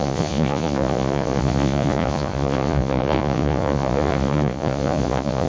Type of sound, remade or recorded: remade